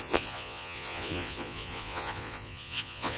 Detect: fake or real fake